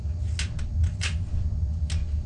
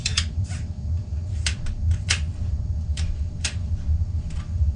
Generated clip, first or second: second